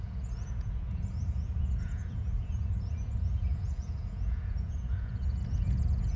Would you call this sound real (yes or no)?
no